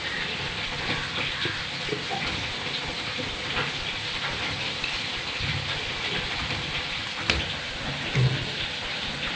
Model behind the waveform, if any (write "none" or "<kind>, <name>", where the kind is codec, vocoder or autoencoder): vocoder, BigVGAN v2